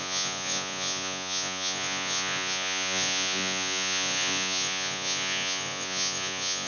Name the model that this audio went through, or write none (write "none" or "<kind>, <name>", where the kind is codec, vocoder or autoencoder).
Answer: vocoder, Vocos